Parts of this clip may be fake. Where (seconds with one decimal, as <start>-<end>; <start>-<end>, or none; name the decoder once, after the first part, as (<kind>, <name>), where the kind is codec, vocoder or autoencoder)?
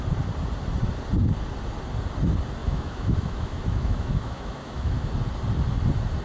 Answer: 2.6-5.1 (autoencoder, DAC-VAE)